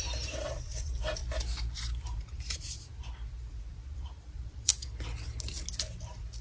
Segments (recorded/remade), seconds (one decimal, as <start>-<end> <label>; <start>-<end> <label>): 0.0-1.2 remade; 1.2-2.0 recorded; 2.0-2.9 remade; 2.9-3.7 recorded; 3.7-4.7 remade; 4.7-6.4 recorded

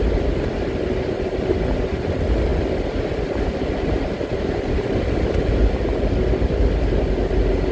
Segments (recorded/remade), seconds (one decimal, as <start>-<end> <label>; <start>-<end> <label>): 0.0-7.7 recorded

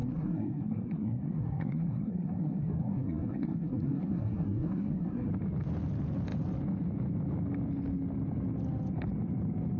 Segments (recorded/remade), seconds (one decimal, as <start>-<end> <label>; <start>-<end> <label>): 0.0-5.3 remade; 5.3-9.8 recorded